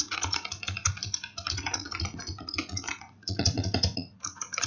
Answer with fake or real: fake